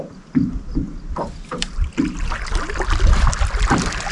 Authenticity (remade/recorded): recorded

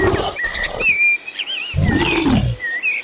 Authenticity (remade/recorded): recorded